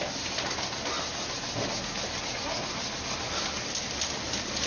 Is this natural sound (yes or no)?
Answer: yes